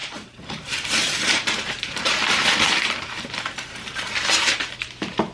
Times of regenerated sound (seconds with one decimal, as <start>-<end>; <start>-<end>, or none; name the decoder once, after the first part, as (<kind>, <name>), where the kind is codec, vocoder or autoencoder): 0.0-5.3 (vocoder, BigVGAN v2)